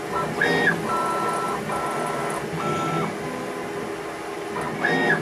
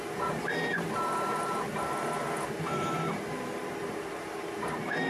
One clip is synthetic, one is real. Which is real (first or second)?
first